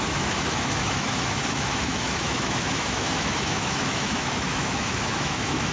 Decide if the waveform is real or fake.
fake